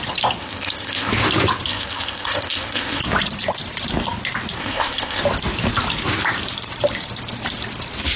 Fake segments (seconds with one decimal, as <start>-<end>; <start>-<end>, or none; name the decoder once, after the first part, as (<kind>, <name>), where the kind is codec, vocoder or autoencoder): 0.4-1.1 (codec, ZipCodec); 1.7-3.0; 4.6-5.2